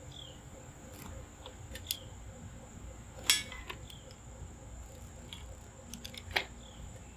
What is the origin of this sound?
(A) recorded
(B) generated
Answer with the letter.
A